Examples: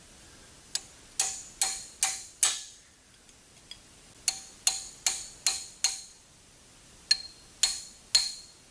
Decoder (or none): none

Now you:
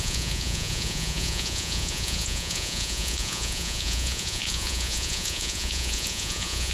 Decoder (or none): vocoder, Vocos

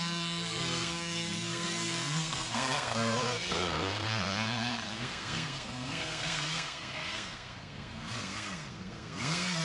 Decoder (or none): codec, SNAC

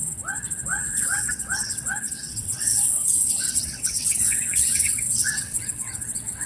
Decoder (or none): vocoder, WaveNeXt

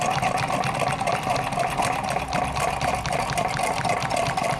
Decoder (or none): none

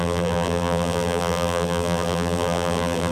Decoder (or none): vocoder, BigVGAN v2